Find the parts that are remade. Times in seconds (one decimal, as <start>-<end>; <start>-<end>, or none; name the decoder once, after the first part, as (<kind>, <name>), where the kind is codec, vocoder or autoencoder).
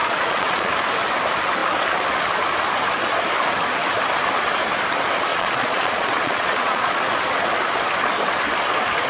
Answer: 0.0-0.7 (vocoder, Vocos); 5.3-7.0